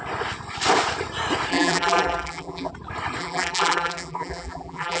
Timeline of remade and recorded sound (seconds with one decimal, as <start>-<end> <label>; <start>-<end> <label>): 0.0-1.5 recorded; 1.5-2.7 remade; 2.7-3.2 recorded; 3.2-5.0 remade